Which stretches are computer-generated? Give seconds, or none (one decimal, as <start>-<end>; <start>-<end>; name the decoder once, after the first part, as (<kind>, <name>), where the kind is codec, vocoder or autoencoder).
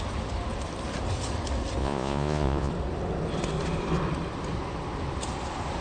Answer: 1.8-2.7 (vocoder, Vocos)